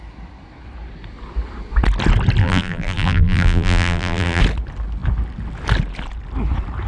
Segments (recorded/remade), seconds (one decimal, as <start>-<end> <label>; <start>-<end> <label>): 0.0-2.4 recorded; 2.4-4.4 remade; 4.4-6.9 recorded